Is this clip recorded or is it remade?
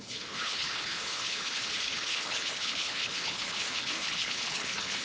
remade